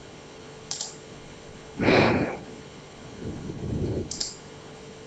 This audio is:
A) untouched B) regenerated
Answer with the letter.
B